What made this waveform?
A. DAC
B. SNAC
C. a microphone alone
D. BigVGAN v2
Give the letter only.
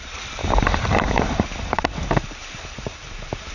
D